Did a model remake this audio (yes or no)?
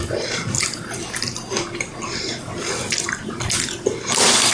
no